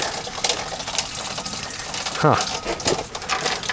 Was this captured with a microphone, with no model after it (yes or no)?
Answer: yes